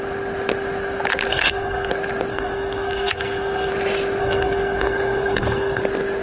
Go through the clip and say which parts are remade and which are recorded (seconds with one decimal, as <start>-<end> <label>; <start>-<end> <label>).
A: 0.0-1.3 recorded; 1.3-1.9 remade; 1.9-2.3 recorded; 2.3-3.7 remade; 3.7-4.2 recorded; 4.2-5.8 remade; 5.8-6.2 recorded